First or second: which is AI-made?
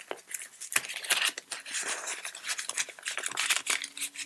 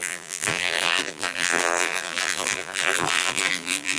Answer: second